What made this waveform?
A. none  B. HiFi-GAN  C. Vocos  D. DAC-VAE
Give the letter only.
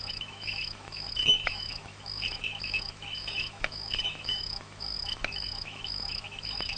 D